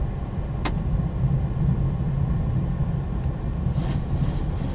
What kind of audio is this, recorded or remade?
recorded